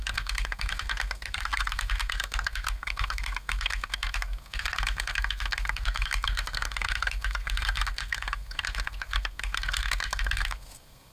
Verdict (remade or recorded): remade